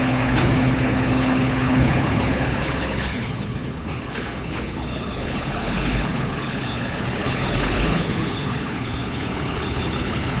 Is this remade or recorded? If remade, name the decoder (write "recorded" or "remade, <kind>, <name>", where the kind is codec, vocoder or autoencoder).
remade, codec, HILCodec